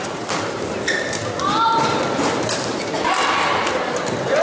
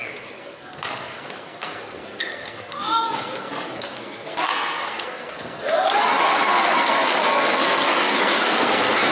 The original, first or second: first